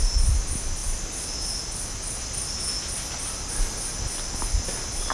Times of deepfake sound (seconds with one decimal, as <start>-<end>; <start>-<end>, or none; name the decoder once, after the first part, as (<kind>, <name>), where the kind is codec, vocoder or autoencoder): none